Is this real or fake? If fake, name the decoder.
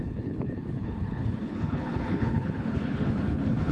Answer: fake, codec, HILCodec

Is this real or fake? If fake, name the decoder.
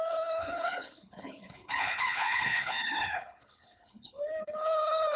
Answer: fake, codec, HILCodec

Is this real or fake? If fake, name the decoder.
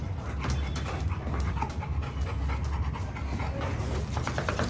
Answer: real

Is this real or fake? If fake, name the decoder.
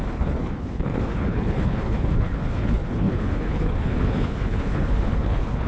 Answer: fake, codec, HILCodec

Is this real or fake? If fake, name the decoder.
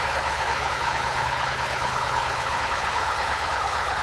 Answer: fake, codec, HILCodec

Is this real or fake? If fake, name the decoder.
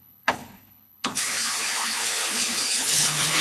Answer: fake, codec, HILCodec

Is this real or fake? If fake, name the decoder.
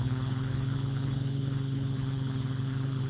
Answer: fake, codec, HILCodec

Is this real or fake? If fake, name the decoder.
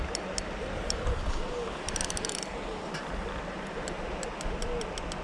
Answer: real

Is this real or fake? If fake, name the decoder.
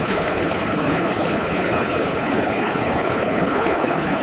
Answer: fake, codec, HILCodec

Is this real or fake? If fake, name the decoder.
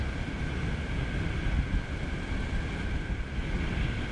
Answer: real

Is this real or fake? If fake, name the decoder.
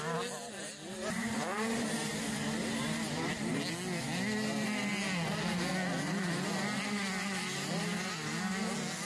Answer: real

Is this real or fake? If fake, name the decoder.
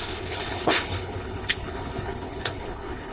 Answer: fake, codec, HILCodec